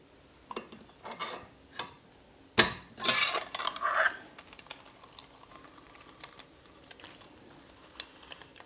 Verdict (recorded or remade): recorded